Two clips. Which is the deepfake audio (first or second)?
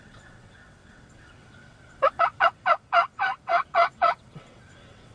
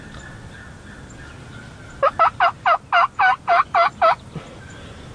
first